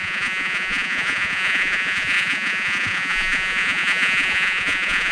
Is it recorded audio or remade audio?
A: remade